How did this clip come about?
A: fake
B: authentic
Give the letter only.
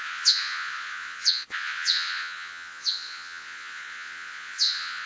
A